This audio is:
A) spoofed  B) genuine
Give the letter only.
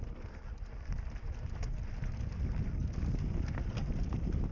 B